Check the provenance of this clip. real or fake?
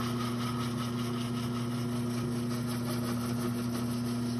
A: real